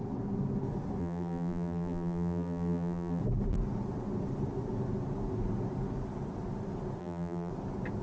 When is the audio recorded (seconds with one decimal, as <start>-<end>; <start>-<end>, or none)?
0.0-1.0; 3.2-7.0; 7.5-8.0